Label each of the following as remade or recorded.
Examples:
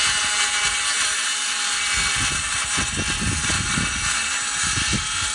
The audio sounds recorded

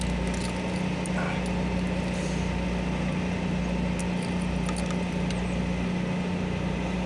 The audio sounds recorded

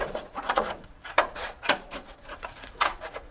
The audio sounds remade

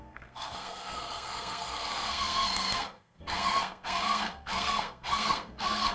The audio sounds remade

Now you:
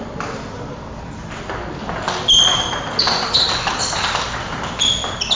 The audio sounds recorded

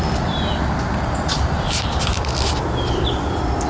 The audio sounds recorded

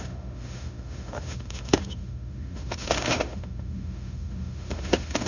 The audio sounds remade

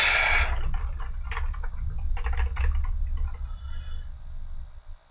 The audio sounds recorded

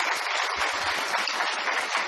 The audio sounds recorded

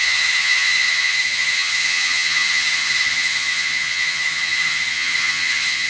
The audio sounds remade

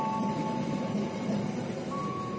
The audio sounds recorded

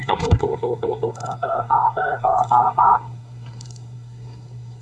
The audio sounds remade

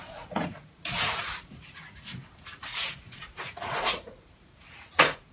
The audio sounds remade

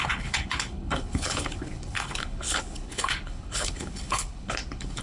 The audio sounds remade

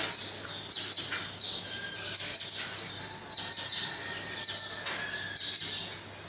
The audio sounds recorded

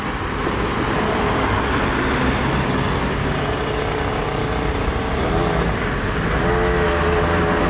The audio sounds recorded